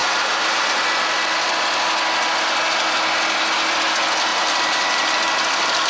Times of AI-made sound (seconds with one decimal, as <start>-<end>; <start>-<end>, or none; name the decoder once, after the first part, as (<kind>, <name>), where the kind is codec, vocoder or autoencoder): 0.0-0.8 (vocoder, BigVGAN v2); 4.3-5.4